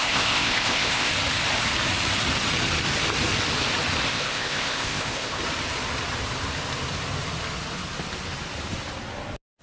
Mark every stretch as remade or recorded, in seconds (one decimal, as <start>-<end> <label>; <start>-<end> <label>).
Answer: 0.0-1.1 remade; 1.1-4.1 recorded; 4.1-5.4 remade; 5.4-9.6 recorded